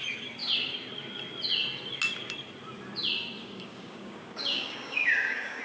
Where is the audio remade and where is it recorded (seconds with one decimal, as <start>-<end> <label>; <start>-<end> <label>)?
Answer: 0.0-3.4 recorded; 3.4-5.6 remade